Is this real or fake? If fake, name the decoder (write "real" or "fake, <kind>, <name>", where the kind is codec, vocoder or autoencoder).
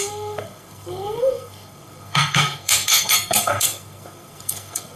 fake, codec, SNAC